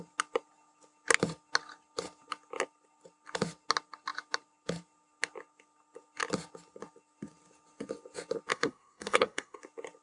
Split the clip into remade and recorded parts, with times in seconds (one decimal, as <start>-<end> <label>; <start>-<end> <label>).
0.0-8.5 recorded; 8.5-9.6 remade; 9.6-10.0 recorded